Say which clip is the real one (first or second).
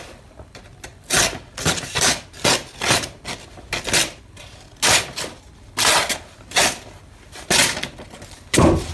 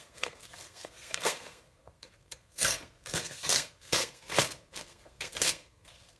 first